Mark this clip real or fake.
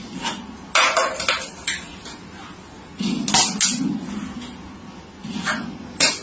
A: real